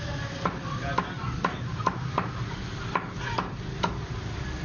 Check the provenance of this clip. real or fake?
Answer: real